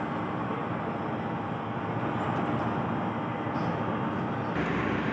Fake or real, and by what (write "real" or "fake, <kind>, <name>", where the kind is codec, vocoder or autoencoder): real